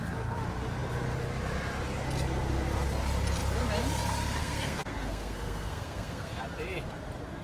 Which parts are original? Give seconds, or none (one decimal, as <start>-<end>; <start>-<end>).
0.0-4.4; 6.4-7.4